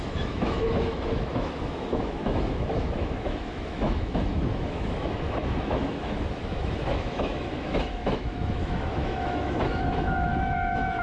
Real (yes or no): no